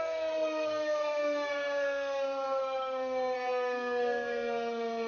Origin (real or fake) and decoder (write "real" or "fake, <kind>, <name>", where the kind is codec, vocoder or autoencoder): fake, codec, SNAC